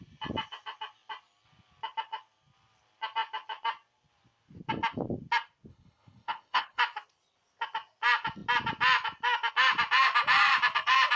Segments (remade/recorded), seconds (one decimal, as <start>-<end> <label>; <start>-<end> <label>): 0.0-5.7 recorded; 5.7-6.8 remade; 6.8-11.2 recorded